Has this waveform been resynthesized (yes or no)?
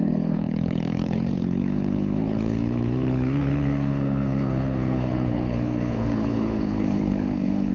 yes